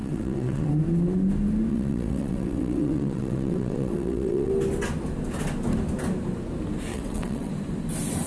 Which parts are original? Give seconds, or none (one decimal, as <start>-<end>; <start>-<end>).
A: 0.7-1.7; 4.5-6.9; 7.5-8.3

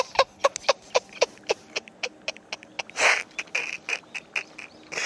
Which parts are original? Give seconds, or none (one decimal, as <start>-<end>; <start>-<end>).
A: 0.0-5.1

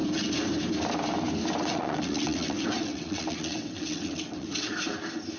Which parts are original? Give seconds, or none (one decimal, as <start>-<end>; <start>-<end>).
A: 0.0-1.6; 4.8-5.4

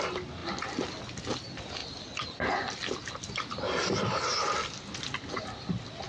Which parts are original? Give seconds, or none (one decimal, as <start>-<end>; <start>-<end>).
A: 0.0-6.1

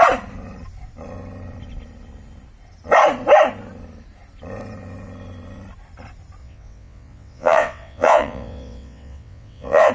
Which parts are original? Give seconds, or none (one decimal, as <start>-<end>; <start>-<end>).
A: 0.0-6.4